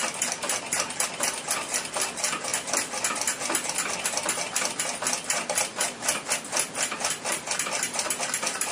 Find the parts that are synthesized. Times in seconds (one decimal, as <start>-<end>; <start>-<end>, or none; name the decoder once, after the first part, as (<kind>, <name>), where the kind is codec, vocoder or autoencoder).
none